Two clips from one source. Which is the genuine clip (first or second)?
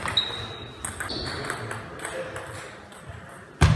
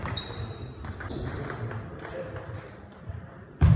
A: first